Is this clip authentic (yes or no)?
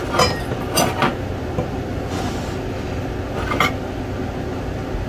yes